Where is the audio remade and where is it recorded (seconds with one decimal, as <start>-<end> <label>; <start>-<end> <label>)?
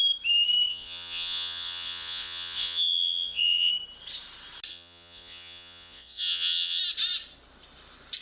0.0-0.7 recorded; 0.7-3.7 remade; 3.7-4.7 recorded; 4.7-6.8 remade; 6.8-8.2 recorded